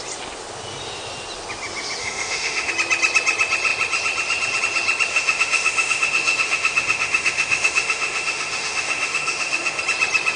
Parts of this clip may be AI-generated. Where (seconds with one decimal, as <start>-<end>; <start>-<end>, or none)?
2.0-2.7; 5.1-9.8